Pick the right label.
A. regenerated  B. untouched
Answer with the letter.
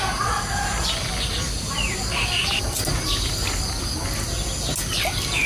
B